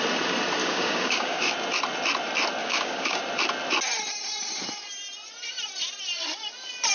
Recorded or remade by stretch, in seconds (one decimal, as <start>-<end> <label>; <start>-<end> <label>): 0.0-0.6 recorded; 0.6-1.5 remade; 1.5-2.6 recorded; 2.6-3.2 remade; 3.2-6.9 recorded